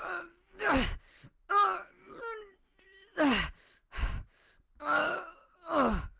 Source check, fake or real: real